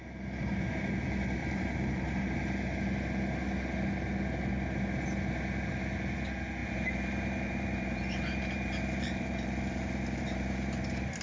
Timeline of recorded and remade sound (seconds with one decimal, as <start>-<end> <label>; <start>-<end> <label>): 0.0-1.4 recorded; 1.4-2.2 remade; 2.2-6.6 recorded; 6.6-10.7 remade; 10.7-11.2 recorded